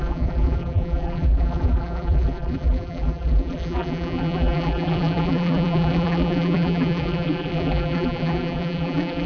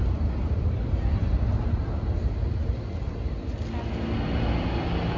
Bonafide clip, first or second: second